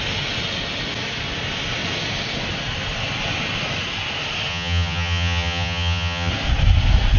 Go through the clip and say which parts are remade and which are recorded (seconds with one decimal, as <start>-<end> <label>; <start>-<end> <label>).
0.0-4.5 recorded; 4.5-6.3 remade; 6.3-7.2 recorded